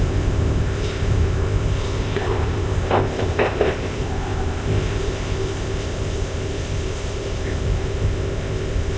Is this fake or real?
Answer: fake